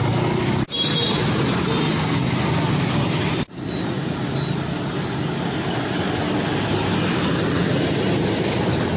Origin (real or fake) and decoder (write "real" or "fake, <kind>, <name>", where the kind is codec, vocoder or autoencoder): real